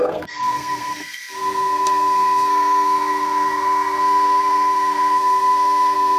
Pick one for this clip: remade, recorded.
remade